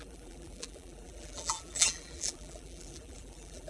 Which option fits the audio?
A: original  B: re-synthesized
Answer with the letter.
B